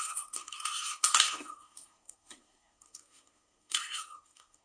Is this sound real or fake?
fake